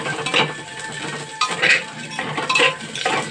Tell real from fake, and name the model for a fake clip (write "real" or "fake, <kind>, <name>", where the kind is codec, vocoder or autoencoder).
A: real